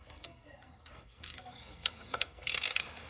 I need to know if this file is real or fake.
fake